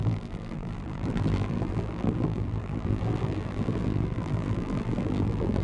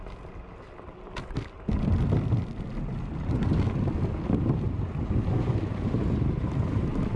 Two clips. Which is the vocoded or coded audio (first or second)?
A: first